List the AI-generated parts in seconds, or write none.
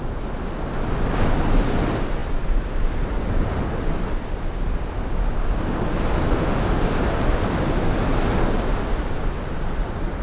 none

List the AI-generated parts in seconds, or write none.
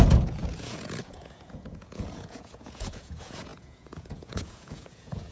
0.0-5.3 (vocoder, Vocos)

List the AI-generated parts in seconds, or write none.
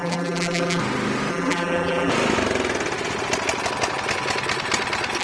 0.0-0.8 (vocoder, BigVGAN v2); 1.3-2.1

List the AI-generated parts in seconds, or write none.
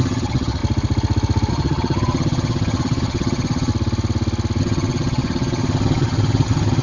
0.0-0.6 (vocoder, HiFi-GAN); 1.5-3.7; 4.6-6.8